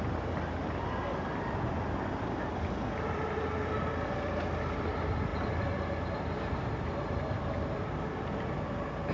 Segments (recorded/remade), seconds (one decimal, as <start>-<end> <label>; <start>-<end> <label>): 0.0-5.3 remade; 5.3-6.8 recorded; 6.8-9.1 remade